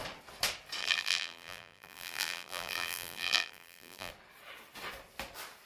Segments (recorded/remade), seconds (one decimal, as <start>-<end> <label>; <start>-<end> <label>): 0.0-0.8 recorded; 0.8-4.1 remade; 4.1-5.7 recorded